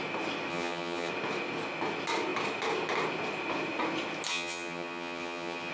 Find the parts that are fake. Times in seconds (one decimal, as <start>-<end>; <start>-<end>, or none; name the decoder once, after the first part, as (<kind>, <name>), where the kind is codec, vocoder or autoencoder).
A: 0.5-1.1 (vocoder, HiFi-GAN); 4.3-5.7